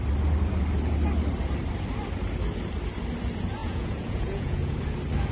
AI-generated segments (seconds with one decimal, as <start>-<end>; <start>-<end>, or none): 3.6-4.8